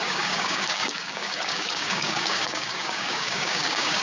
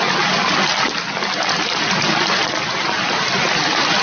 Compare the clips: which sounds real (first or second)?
second